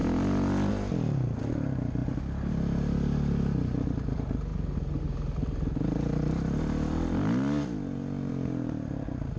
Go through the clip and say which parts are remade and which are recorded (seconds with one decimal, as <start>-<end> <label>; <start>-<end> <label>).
0.0-9.4 recorded